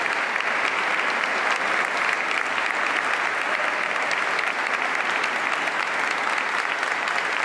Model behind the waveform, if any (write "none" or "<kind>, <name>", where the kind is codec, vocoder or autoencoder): none